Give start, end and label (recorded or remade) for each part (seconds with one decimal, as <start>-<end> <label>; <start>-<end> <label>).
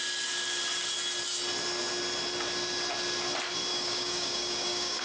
0.0-3.7 recorded; 3.7-5.0 remade